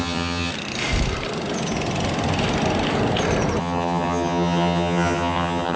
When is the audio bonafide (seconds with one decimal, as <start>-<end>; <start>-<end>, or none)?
0.5-3.6